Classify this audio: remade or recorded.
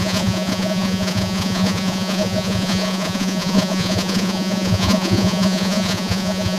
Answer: remade